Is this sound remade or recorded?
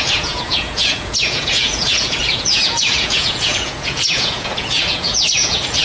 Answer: remade